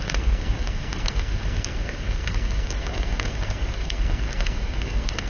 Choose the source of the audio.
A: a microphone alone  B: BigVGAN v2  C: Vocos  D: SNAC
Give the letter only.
D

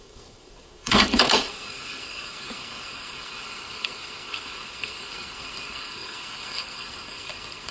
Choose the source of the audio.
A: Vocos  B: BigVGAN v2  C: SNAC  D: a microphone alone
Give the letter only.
C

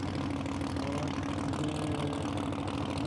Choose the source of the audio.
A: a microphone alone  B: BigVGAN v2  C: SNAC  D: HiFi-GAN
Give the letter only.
A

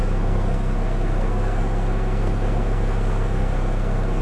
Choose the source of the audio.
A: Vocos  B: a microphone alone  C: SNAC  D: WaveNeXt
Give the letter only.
C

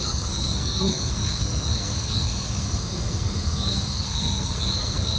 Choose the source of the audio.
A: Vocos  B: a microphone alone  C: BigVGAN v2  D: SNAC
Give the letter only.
D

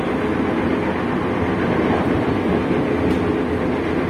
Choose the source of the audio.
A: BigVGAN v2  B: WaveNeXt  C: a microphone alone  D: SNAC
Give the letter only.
C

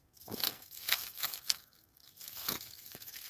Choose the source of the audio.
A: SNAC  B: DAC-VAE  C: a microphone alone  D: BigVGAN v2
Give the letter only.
A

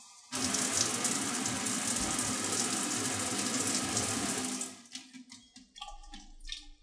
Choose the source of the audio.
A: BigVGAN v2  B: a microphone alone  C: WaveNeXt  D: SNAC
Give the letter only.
B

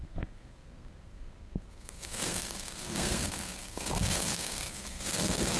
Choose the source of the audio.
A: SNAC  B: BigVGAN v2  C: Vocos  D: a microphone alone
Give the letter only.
A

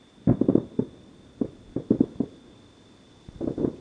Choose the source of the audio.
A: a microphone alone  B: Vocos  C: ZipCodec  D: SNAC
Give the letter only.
A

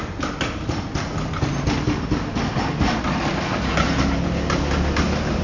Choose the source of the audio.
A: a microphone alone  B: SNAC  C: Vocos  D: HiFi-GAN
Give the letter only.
A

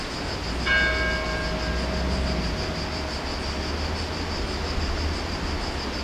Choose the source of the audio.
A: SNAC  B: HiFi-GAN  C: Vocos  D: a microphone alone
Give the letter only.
D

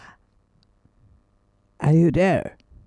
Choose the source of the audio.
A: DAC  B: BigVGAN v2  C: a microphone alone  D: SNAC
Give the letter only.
C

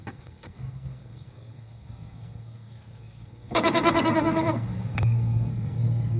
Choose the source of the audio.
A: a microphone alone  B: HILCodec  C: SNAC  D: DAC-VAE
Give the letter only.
C